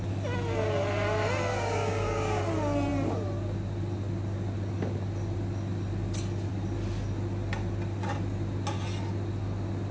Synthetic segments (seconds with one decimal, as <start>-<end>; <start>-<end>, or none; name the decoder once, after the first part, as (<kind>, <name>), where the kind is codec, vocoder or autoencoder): 1.5-2.4 (codec, DAC)